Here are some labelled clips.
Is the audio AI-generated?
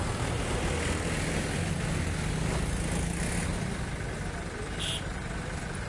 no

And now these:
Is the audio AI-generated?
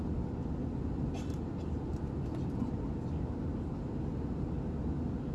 no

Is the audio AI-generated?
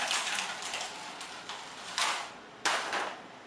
no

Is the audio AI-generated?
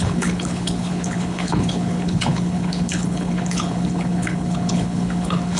yes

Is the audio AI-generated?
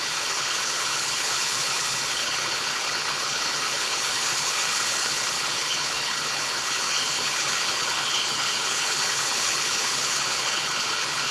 yes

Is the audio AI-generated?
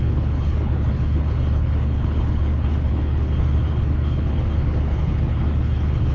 yes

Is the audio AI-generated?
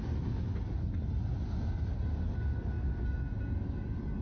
no